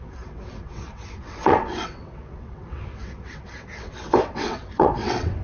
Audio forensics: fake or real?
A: fake